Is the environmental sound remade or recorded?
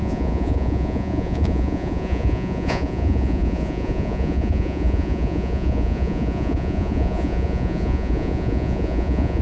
remade